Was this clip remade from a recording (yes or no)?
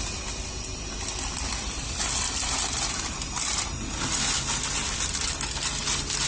no